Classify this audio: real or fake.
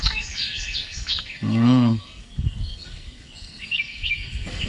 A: fake